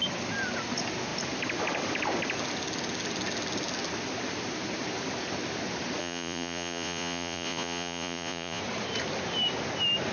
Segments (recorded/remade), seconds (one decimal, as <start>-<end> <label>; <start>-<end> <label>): 0.0-6.0 recorded; 6.0-8.6 remade; 8.6-10.1 recorded